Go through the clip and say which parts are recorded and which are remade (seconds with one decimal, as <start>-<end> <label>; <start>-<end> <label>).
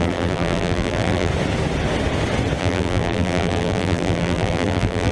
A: 0.0-1.3 remade; 1.3-2.6 recorded; 2.6-5.1 remade